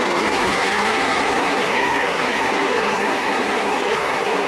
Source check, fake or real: fake